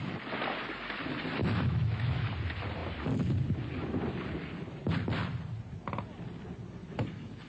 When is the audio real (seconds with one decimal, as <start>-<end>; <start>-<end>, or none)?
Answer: 0.0-1.4; 2.3-6.8